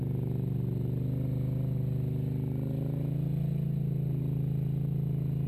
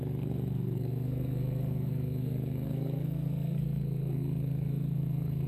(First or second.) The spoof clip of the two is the second